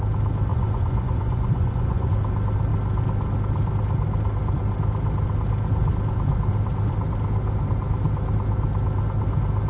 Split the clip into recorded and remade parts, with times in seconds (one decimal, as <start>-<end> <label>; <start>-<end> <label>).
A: 0.0-0.5 recorded; 0.5-2.1 remade; 2.1-9.7 recorded